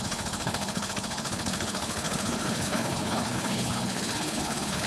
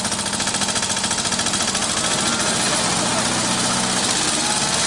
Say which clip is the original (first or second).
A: second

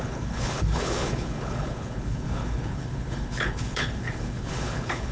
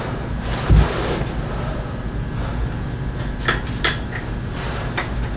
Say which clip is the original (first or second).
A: second